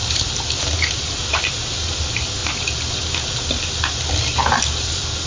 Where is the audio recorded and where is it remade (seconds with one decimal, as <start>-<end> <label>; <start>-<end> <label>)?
0.0-5.3 recorded